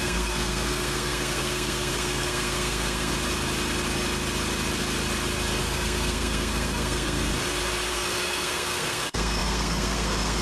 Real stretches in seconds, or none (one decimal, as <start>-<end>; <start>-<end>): 3.1-5.6; 7.3-7.9